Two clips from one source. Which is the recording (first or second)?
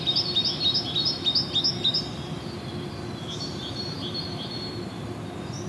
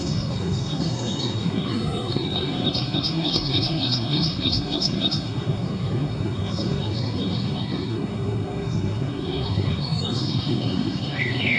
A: first